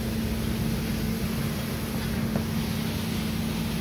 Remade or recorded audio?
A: recorded